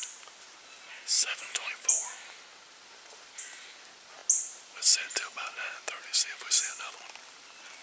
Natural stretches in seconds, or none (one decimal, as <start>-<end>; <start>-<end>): 0.0-1.2; 1.7-7.8